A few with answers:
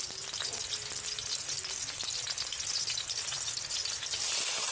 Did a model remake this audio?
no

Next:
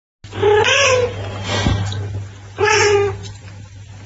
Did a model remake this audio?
no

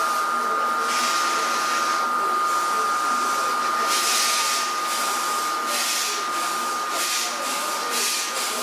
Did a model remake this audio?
no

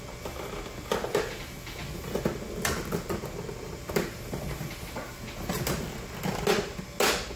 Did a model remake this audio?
no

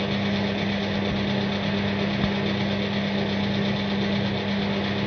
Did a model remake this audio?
no